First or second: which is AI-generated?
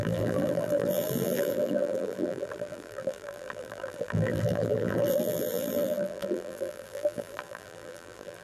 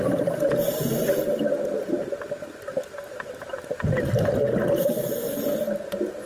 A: first